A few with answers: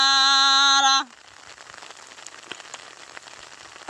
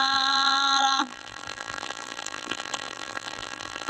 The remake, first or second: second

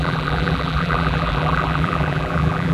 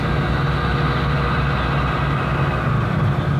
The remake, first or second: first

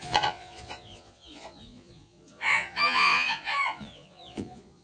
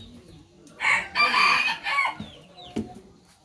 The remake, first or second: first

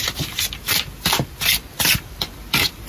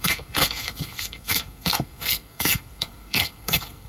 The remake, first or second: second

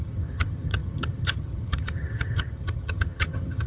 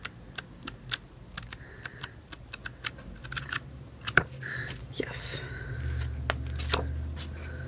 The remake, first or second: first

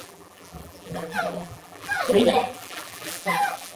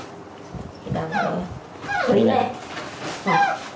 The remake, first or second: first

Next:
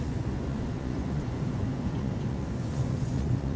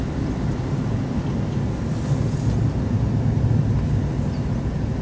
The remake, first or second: first